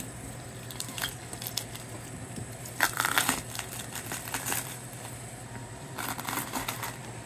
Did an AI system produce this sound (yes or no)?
yes